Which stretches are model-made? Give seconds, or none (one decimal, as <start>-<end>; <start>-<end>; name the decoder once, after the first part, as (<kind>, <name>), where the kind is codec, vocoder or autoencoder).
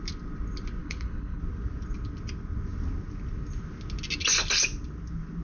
0.8-1.4 (codec, HILCodec)